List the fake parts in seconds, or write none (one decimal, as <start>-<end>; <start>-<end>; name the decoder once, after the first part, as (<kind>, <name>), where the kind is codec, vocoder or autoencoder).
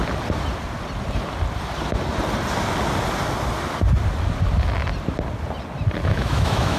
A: 6.0-6.8 (autoencoder, DAC-VAE)